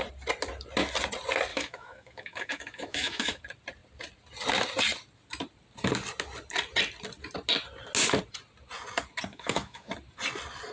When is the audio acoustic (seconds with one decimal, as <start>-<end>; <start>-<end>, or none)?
0.0-1.5; 3.4-9.3; 9.9-10.7